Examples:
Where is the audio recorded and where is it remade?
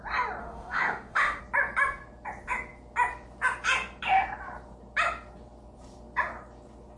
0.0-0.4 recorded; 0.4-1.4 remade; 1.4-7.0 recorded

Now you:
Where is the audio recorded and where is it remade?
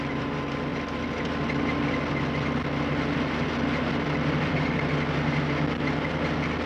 0.0-6.7 recorded